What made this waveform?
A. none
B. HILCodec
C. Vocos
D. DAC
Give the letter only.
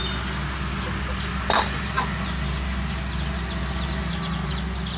A